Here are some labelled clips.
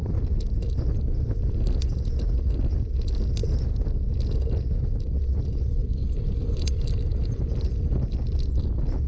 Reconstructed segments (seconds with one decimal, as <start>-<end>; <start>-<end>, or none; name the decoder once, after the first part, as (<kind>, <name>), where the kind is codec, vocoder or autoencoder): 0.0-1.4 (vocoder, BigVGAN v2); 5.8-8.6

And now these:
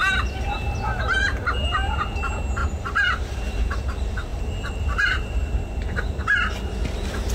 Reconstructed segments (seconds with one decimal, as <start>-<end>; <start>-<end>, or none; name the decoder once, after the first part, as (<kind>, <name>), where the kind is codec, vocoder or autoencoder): 1.6-2.2 (vocoder, BigVGAN v2); 2.6-3.8; 4.3-6.2

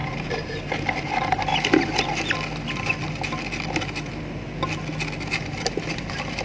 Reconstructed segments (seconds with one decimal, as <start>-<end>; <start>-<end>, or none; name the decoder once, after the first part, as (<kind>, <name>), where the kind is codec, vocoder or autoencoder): 0.0-1.5 (vocoder, BigVGAN v2); 5.3-6.4

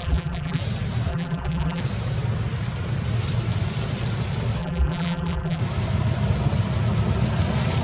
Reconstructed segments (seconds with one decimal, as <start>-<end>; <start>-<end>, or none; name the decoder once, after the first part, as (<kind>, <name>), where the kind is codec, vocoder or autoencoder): 0.0-0.6 (vocoder, BigVGAN v2); 1.1-1.8; 4.6-5.6

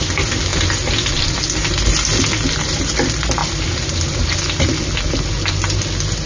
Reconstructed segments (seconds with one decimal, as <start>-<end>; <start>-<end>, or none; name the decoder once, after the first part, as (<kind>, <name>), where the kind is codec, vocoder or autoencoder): none

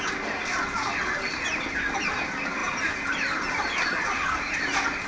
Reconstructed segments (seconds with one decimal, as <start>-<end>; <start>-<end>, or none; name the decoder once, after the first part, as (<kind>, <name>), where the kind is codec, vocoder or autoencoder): none